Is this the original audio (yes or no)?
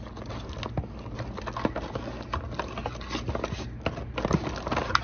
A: yes